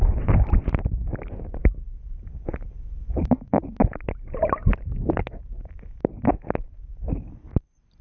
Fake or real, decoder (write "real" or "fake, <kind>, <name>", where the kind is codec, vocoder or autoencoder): real